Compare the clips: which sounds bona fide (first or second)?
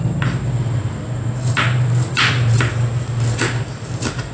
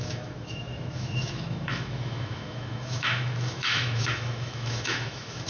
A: first